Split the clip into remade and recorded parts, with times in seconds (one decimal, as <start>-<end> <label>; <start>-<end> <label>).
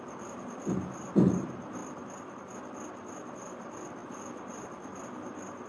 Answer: 0.0-5.7 recorded